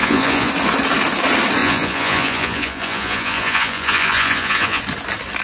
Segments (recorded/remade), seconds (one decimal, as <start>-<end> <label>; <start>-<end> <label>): 0.0-0.5 remade; 0.5-1.6 recorded; 1.6-4.8 remade; 4.8-5.4 recorded